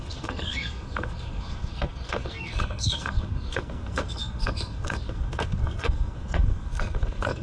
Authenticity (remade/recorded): remade